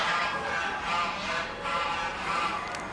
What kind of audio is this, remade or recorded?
recorded